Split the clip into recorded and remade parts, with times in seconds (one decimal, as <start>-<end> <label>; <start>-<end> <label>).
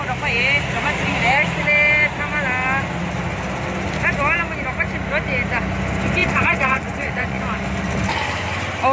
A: 0.0-6.2 recorded; 6.2-7.4 remade; 7.4-8.9 recorded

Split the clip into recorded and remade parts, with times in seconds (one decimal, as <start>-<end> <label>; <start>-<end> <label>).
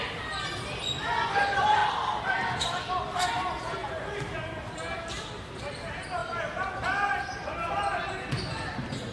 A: 0.0-9.1 recorded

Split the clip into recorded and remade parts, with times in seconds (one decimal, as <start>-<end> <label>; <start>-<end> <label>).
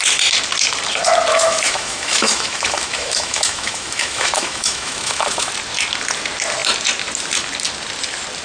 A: 0.0-1.3 recorded; 1.3-5.5 remade; 5.5-8.4 recorded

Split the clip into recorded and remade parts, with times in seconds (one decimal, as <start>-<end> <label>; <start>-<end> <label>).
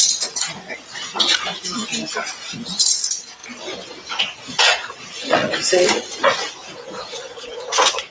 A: 0.0-1.8 remade; 1.8-2.3 recorded; 2.3-3.4 remade; 3.4-4.2 recorded; 4.2-8.1 remade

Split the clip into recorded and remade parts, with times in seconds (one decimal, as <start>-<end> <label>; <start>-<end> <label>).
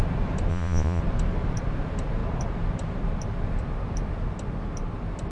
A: 0.0-0.5 recorded; 0.5-1.0 remade; 1.0-5.3 recorded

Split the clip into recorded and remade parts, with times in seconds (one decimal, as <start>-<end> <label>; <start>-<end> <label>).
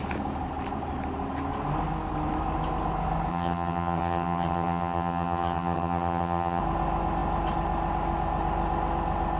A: 0.0-3.3 recorded; 3.3-6.6 remade; 6.6-9.4 recorded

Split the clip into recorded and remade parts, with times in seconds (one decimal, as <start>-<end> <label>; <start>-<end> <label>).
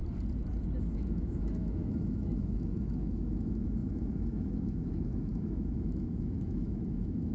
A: 0.0-0.8 recorded; 0.8-7.3 remade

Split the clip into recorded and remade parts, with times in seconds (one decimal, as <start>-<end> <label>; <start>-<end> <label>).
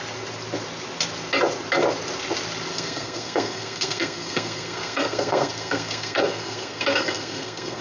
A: 0.0-2.7 recorded; 2.7-7.8 remade